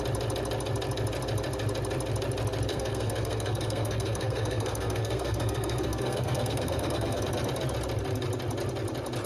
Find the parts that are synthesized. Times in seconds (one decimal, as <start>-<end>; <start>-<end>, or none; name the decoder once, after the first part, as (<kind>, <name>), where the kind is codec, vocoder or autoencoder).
2.7-7.2 (codec, SNAC)